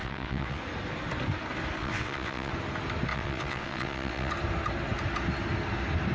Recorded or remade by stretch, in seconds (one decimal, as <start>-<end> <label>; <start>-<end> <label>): 0.0-0.6 remade; 0.6-1.8 recorded; 1.8-2.5 remade; 2.5-3.1 recorded; 3.1-4.3 remade; 4.3-6.1 recorded